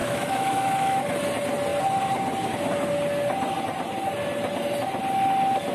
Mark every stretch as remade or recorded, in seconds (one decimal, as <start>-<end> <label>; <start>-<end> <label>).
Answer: 0.0-1.0 remade; 1.0-5.7 recorded